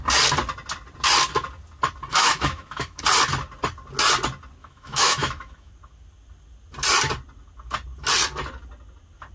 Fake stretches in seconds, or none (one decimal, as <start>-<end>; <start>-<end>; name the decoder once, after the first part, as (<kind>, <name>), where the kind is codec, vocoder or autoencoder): 2.1-3.0 (autoencoder, DAC-VAE); 4.6-5.7